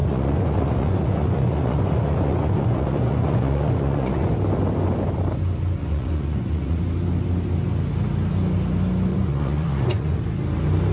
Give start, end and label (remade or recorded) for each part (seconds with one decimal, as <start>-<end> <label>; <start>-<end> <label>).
0.0-4.3 remade; 4.3-5.8 recorded; 5.8-6.8 remade; 6.8-9.1 recorded; 9.1-10.2 remade; 10.2-10.9 recorded

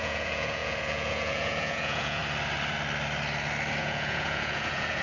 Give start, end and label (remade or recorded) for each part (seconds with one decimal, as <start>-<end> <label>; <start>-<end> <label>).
0.0-2.2 remade; 2.2-3.8 recorded; 3.8-5.0 remade